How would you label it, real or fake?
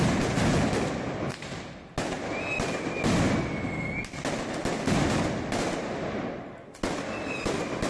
real